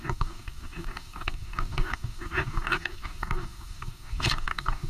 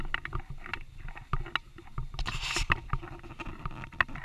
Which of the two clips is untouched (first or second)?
second